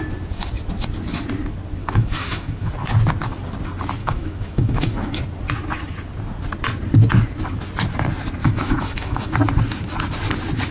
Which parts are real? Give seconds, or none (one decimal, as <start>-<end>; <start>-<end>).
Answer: 0.0-1.8; 2.7-4.0; 5.2-8.4; 9.3-10.7